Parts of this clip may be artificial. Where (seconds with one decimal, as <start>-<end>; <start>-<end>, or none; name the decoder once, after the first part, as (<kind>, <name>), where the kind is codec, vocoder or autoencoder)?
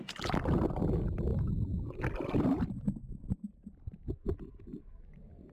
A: none